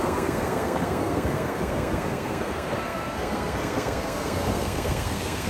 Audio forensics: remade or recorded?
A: remade